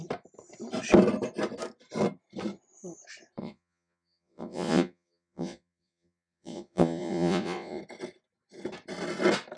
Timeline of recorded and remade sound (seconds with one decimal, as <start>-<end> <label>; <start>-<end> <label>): 0.0-3.4 recorded; 3.4-7.8 remade; 7.8-9.6 recorded

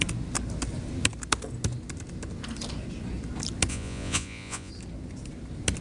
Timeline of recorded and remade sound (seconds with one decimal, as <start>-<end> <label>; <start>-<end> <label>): 0.0-3.7 recorded; 3.7-4.7 remade; 4.7-5.8 recorded

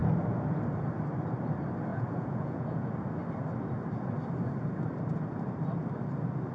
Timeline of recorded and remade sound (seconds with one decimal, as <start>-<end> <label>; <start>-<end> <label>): 0.0-1.9 recorded; 1.9-2.9 remade; 2.9-6.5 recorded

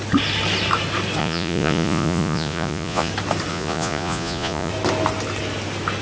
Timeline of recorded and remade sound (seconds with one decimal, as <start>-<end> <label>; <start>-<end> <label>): 0.0-1.2 recorded; 1.2-3.1 remade; 3.1-3.5 recorded; 3.5-4.7 remade; 4.7-6.0 recorded

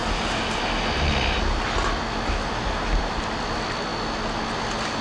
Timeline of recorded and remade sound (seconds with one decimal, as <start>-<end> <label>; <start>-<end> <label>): 0.0-5.0 recorded

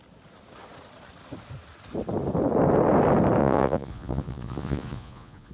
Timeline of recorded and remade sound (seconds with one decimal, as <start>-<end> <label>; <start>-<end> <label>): 0.0-3.4 recorded; 3.4-5.5 remade

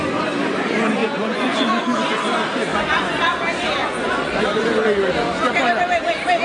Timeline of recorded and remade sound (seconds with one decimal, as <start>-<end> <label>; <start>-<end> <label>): 0.0-1.0 recorded; 1.0-1.8 remade; 1.8-2.7 recorded; 2.7-3.2 remade; 3.2-3.8 recorded; 3.8-4.4 remade; 4.4-6.4 recorded